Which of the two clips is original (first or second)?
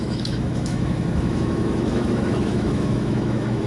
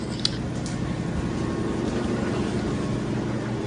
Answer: second